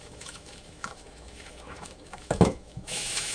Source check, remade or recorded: remade